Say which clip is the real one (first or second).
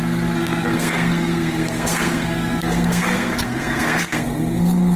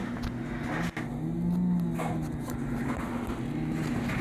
second